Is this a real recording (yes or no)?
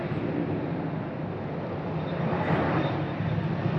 yes